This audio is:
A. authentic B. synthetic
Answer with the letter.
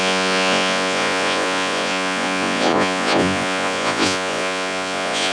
B